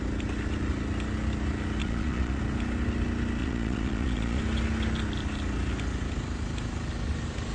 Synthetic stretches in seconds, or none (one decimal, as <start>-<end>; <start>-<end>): 1.8-2.4; 3.4-4.4